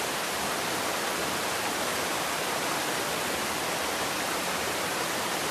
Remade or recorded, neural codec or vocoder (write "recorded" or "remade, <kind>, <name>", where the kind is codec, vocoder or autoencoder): recorded